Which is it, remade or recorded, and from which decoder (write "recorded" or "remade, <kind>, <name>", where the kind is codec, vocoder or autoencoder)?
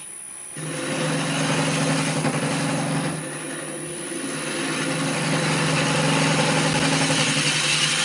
recorded